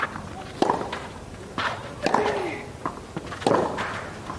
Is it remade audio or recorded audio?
recorded